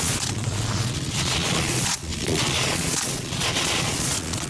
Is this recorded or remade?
remade